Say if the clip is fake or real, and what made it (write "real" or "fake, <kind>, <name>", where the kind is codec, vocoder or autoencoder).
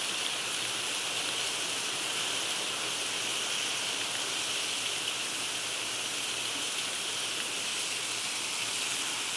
real